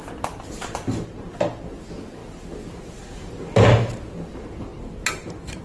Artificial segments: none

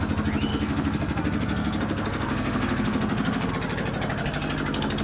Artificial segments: 0.5-3.5